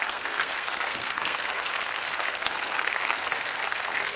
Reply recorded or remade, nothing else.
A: remade